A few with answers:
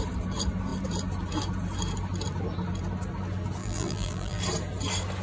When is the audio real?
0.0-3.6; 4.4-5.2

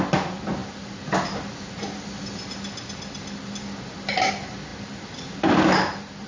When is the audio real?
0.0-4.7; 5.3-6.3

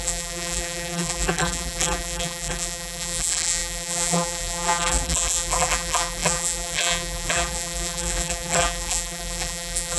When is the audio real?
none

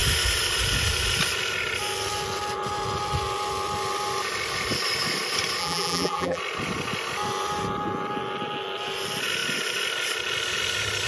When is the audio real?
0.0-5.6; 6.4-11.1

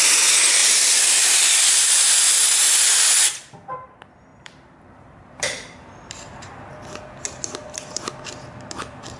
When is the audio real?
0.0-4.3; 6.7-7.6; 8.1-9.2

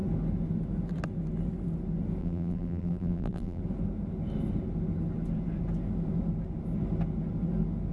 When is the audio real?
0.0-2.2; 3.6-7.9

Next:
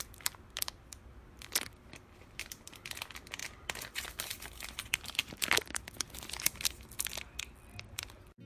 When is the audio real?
3.4-4.1; 5.2-7.7

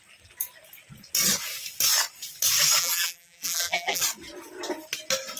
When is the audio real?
0.0-2.8; 4.0-5.4